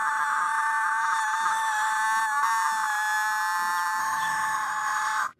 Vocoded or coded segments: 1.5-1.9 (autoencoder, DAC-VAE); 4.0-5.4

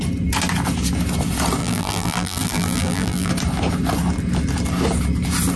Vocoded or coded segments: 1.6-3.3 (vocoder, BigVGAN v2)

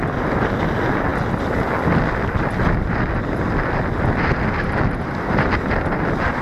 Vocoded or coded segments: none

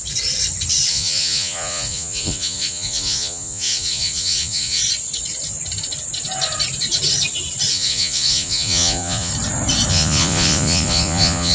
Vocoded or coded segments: 0.9-4.8 (vocoder, Vocos); 7.7-9.3; 9.9-11.5

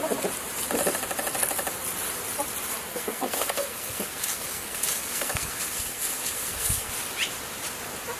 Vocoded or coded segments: 2.9-6.9 (codec, SNAC)

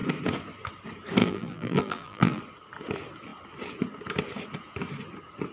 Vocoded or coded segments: 1.2-2.4 (vocoder, BigVGAN v2)

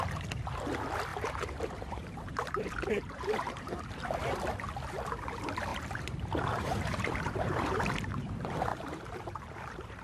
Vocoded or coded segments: 1.1-3.8 (vocoder, BigVGAN v2); 5.7-7.8; 8.7-10.0